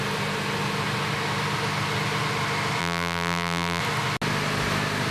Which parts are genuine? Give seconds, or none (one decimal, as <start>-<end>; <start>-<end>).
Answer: 0.0-2.8; 3.8-5.1